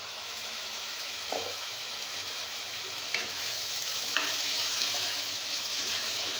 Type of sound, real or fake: fake